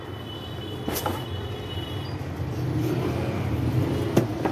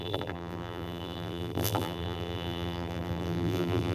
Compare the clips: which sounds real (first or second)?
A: first